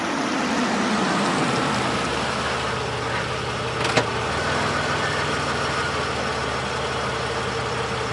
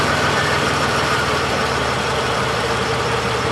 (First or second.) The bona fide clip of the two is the first